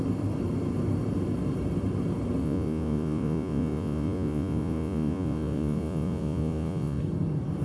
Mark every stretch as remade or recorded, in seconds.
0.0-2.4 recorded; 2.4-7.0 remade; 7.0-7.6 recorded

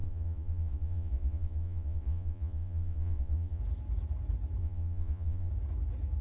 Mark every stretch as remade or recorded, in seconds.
0.0-3.6 remade; 3.6-4.6 recorded; 4.6-5.5 remade; 5.5-6.2 recorded

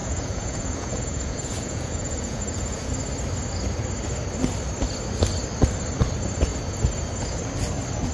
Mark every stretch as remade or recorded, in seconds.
0.0-2.9 remade; 2.9-8.1 recorded

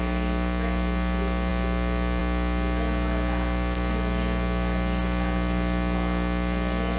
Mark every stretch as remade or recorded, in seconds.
0.0-7.0 recorded

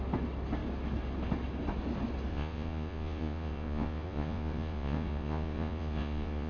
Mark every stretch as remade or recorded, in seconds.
0.0-2.3 recorded; 2.3-6.5 remade